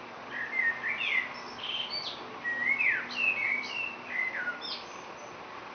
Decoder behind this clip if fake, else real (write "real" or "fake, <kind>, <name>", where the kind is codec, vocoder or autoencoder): real